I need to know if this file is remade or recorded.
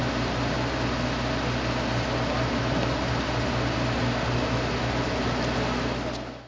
recorded